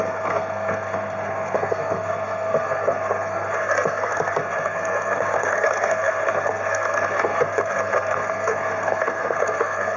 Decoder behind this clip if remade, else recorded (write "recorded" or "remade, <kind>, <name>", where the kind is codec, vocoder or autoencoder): remade, codec, SNAC